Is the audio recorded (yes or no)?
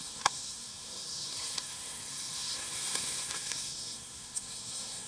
no